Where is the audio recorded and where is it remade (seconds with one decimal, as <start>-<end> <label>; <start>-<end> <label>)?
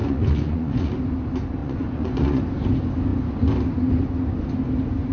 0.0-0.9 remade; 0.9-1.6 recorded; 1.6-2.4 remade; 2.4-5.1 recorded